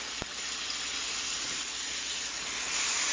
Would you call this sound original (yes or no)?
yes